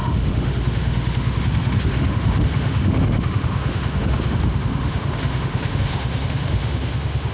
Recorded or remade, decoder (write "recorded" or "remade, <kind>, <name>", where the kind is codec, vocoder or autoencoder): remade, autoencoder, DAC-VAE